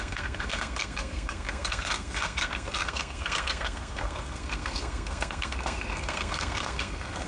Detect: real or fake fake